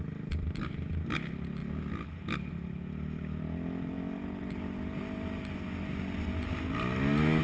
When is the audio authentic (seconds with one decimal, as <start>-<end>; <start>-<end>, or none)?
0.0-7.4